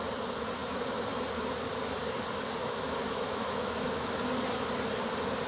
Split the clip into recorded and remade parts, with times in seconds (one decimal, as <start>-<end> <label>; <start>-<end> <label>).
0.0-2.6 recorded; 2.6-4.1 remade; 4.1-5.5 recorded